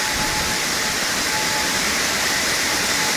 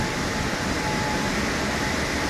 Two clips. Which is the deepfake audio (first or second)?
first